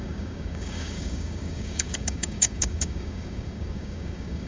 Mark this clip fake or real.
fake